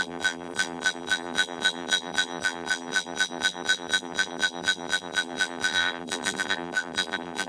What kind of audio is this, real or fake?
fake